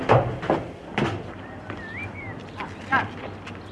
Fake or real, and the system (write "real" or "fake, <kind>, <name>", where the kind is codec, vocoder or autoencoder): real